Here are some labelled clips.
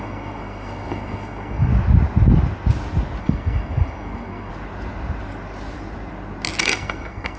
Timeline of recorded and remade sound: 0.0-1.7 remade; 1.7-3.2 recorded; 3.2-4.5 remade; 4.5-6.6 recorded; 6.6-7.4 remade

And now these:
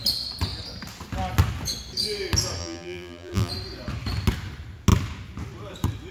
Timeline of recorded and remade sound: 0.0-2.6 recorded; 2.6-3.5 remade; 3.5-6.1 recorded

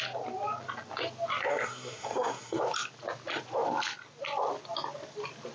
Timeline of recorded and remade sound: 0.0-1.5 recorded; 1.5-2.6 remade; 2.6-5.5 recorded